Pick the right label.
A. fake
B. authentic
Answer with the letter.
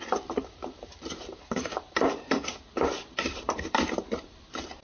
A